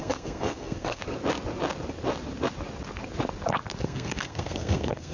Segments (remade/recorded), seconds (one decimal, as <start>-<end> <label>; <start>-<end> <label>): 0.0-1.0 remade; 1.0-3.8 recorded; 3.8-5.1 remade